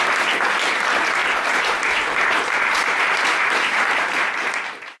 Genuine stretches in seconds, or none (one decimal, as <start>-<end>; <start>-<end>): 0.0-1.2; 4.2-5.0

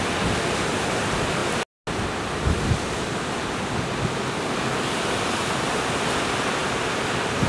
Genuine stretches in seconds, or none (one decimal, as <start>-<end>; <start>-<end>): 0.0-7.5

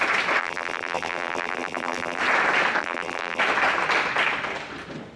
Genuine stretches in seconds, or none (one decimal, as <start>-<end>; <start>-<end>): 0.0-0.4; 2.2-2.8; 3.4-5.2

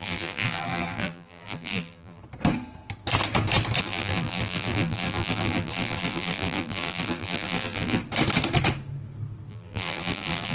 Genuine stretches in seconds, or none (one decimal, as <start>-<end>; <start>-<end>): 2.2-3.8; 8.0-9.5

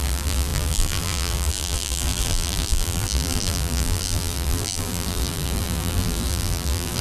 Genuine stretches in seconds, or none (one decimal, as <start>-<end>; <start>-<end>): none